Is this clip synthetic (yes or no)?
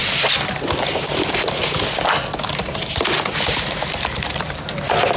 no